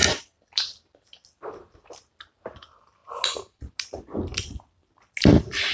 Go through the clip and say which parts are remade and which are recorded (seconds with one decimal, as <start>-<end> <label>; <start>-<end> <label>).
0.0-0.6 remade; 0.6-5.7 recorded